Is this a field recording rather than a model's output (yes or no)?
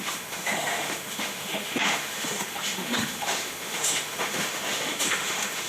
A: no